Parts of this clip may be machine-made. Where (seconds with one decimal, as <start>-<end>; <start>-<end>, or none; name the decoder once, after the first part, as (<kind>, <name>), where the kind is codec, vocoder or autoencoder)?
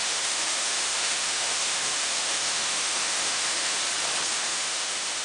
0.0-3.8 (autoencoder, DAC-VAE); 4.3-5.2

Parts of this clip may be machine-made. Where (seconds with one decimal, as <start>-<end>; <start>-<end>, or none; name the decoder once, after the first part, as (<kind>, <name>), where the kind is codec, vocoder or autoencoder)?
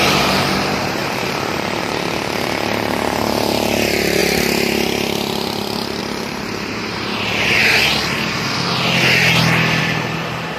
0.0-4.2 (vocoder, BigVGAN v2); 6.0-7.6; 9.8-10.6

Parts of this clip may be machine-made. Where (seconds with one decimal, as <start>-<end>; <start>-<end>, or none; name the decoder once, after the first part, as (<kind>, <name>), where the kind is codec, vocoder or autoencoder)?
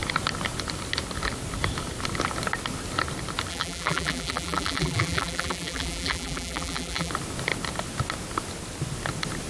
3.5-7.1 (vocoder, BigVGAN v2)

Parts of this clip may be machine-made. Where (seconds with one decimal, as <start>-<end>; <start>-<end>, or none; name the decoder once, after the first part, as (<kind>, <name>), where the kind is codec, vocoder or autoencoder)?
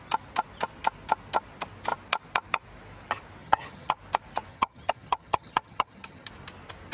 3.4-3.9 (vocoder, HiFi-GAN); 4.5-6.3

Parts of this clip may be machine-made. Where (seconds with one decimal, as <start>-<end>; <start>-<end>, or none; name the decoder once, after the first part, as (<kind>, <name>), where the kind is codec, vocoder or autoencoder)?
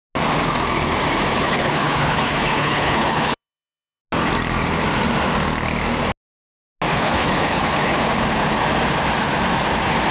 1.3-4.0 (codec, HILCodec); 6.9-8.0